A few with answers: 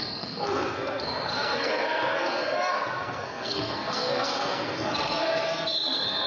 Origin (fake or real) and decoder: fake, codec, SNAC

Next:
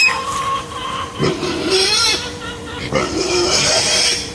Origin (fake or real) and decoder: fake, vocoder, BigVGAN v2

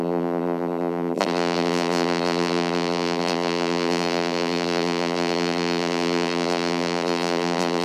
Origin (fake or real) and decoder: fake, vocoder, BigVGAN v2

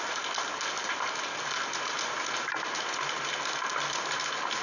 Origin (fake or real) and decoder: real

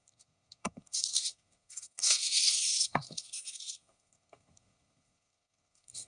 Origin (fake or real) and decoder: fake, codec, SNAC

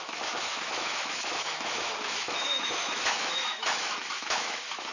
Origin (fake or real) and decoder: fake, autoencoder, DAC-VAE